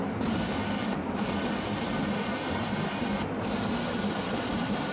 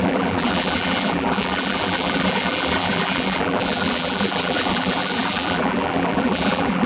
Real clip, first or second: first